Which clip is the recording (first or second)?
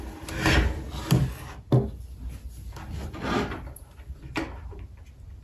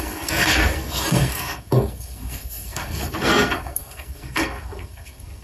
first